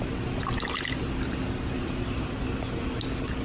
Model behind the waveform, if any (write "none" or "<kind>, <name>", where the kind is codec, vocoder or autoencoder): none